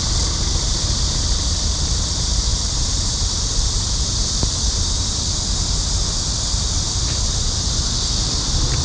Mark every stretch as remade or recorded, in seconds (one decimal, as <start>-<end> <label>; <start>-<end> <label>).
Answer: 0.0-2.5 recorded; 2.5-5.4 remade; 5.4-8.8 recorded